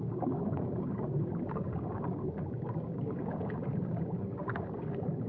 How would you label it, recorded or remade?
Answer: remade